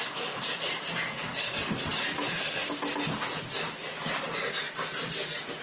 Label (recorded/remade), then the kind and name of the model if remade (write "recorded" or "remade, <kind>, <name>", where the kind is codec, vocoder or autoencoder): recorded